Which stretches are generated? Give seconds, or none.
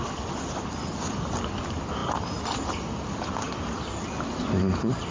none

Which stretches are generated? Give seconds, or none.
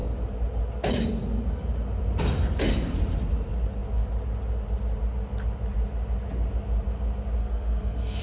7.4-8.2 (codec, SNAC)